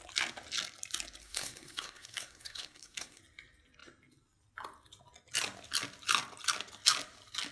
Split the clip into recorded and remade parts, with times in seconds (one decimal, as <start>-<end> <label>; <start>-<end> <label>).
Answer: 0.0-1.2 recorded; 1.2-3.2 remade; 3.2-7.5 recorded